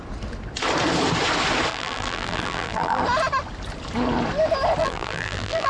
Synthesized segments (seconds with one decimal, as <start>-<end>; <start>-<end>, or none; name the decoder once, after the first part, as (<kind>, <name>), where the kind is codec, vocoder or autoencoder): 1.7-3.0 (vocoder, BigVGAN v2); 4.8-5.7